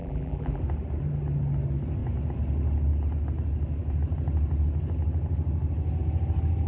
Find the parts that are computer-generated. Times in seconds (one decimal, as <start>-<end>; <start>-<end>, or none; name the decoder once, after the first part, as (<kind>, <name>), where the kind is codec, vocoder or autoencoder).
0.0-0.6 (vocoder, BigVGAN v2)